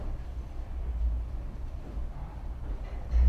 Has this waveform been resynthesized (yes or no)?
no